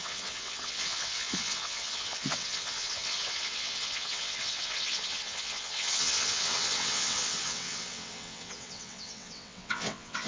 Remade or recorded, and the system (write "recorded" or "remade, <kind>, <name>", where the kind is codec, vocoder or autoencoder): remade, vocoder, WaveNeXt